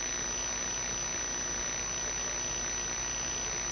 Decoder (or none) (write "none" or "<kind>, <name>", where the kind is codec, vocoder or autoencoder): none